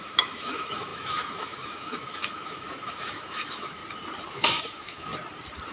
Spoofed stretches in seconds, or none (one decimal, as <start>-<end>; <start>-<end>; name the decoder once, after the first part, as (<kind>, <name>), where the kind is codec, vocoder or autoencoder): 0.0-3.8 (autoencoder, DAC-VAE); 4.3-5.1